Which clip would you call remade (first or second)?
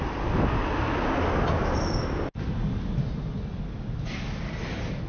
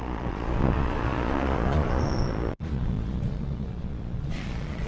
second